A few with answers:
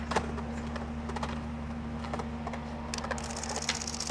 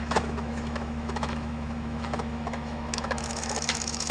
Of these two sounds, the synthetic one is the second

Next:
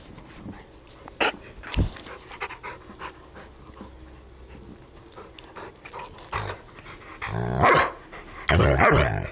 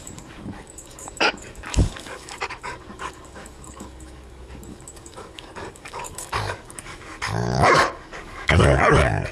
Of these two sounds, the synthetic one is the second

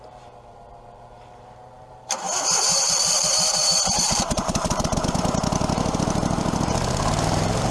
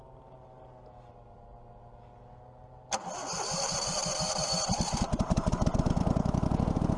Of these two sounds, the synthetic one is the first